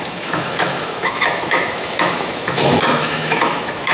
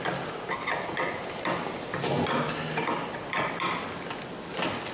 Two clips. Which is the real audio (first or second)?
second